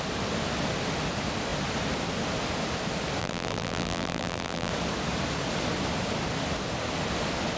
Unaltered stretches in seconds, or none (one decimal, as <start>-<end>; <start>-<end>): 0.0-3.2; 4.7-7.6